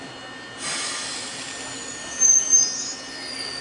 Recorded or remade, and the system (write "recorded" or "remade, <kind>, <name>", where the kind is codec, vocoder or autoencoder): recorded